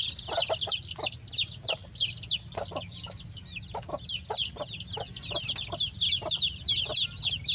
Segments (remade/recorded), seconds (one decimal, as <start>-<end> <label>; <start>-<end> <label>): 0.0-7.5 recorded